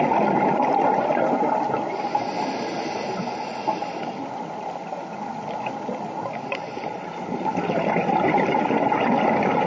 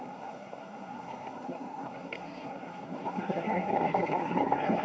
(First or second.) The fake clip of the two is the second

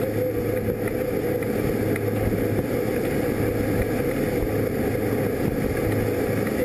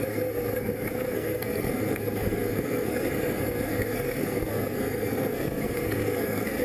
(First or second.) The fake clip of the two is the second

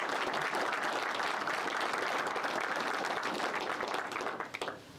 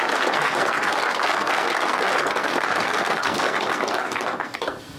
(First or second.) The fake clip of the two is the second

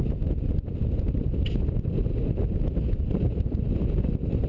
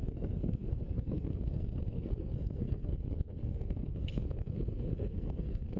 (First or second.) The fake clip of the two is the second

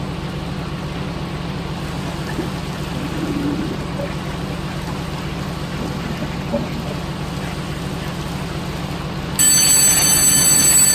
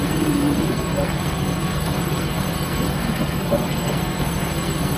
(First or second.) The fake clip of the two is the second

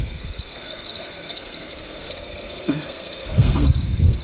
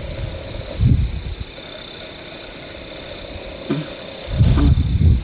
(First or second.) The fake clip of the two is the first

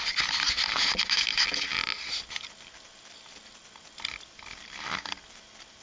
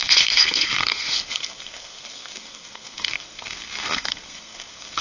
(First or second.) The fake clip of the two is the second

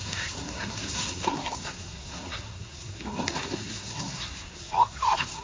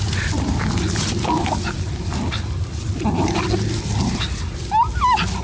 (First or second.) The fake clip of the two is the first